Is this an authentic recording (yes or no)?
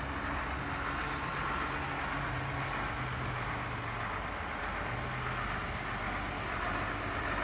yes